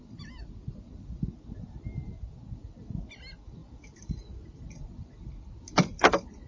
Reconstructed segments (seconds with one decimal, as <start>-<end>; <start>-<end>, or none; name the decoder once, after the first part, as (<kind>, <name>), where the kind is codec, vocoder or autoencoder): 3.6-4.6 (vocoder, BigVGAN v2)